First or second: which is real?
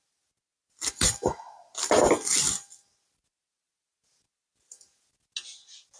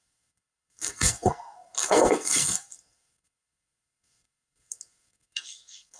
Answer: first